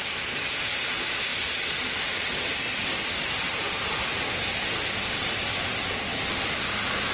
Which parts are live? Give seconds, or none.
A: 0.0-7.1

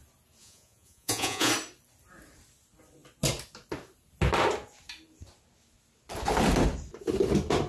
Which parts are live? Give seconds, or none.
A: 0.0-0.4; 1.5-7.7

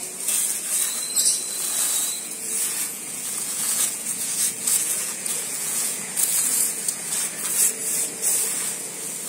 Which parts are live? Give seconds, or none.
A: 0.0-2.0; 7.1-9.3

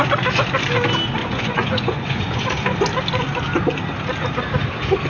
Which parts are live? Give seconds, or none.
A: 0.0-1.2; 2.4-5.1

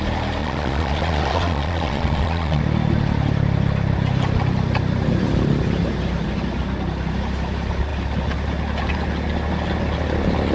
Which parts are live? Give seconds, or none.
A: 0.0-0.4; 2.6-10.5

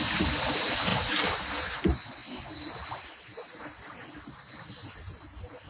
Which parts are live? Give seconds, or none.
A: 0.0-5.7

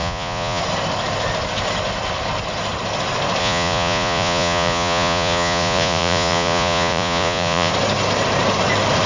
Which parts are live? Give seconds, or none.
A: 0.6-3.4; 7.7-9.1

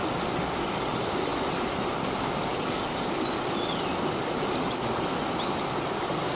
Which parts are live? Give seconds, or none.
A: 0.0-6.3